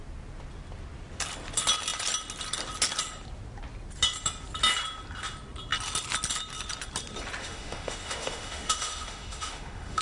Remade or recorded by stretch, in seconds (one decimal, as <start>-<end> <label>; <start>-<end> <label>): 0.0-7.4 recorded; 7.4-10.0 remade